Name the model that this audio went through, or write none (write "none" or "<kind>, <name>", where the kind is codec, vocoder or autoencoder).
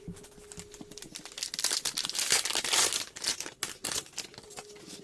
none